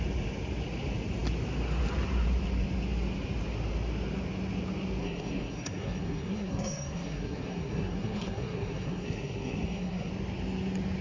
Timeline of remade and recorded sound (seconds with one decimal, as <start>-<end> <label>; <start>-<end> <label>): 0.0-5.0 recorded; 5.0-10.1 remade; 10.1-11.0 recorded